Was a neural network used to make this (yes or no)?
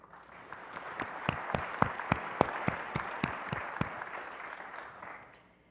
no